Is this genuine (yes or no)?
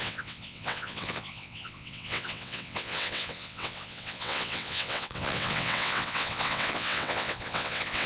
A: no